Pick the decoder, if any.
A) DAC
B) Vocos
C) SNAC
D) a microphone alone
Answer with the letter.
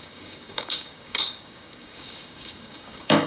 A